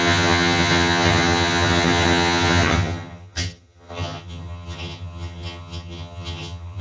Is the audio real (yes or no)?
no